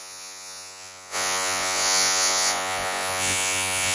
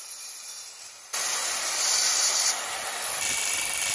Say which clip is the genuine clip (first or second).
second